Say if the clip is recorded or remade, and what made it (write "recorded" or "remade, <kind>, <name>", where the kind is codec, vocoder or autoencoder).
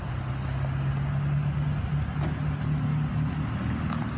recorded